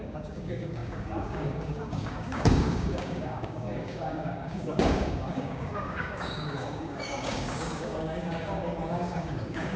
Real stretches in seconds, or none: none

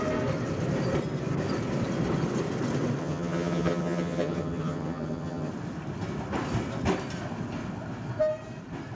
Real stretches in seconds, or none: 0.0-3.0; 5.5-8.9